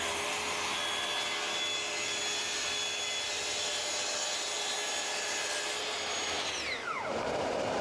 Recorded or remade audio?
recorded